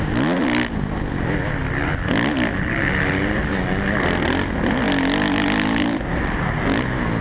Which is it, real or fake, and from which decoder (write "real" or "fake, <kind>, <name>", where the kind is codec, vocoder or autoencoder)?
real